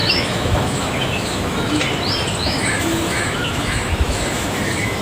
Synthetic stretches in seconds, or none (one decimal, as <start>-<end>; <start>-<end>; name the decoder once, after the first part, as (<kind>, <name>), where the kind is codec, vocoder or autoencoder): 0.0-1.8 (autoencoder, DAC-VAE); 2.4-5.0